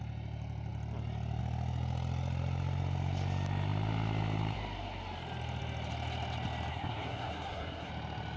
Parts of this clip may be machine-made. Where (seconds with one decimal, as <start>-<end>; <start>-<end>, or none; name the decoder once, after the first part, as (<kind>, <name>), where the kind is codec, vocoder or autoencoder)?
6.7-7.9 (codec, SNAC)